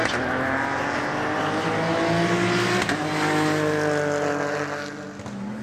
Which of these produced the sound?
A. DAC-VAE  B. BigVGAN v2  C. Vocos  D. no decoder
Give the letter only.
D